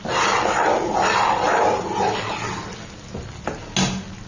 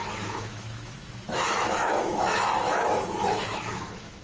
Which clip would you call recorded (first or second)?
first